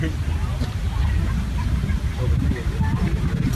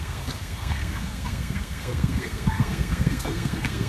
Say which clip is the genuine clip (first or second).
first